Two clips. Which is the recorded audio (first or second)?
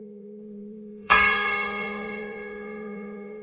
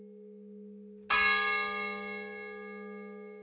second